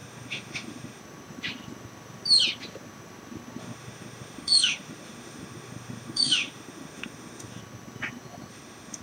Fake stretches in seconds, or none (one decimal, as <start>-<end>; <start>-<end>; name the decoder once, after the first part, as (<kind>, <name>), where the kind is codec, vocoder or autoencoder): 0.0-1.0 (autoencoder, DAC-VAE); 3.6-7.6; 8.5-9.0